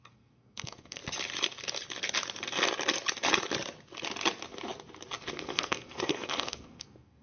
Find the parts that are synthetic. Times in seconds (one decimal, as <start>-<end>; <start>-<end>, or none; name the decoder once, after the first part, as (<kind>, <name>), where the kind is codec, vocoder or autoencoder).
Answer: 0.0-1.0 (codec, SNAC); 5.3-7.2